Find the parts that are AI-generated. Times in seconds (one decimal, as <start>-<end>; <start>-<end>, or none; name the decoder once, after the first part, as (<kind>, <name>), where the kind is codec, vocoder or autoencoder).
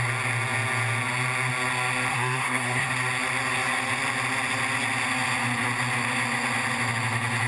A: 2.1-2.9 (codec, SNAC)